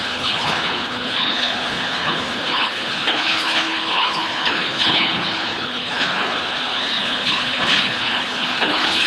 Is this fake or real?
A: fake